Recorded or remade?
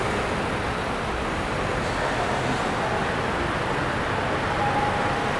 recorded